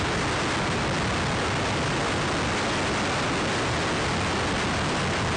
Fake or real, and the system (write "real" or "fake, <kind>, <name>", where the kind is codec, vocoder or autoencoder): real